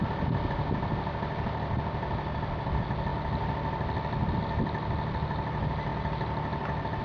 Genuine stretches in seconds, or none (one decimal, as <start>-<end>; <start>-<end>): 0.0-7.0